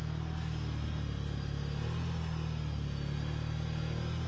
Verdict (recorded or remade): recorded